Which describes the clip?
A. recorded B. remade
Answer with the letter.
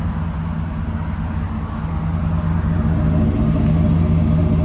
A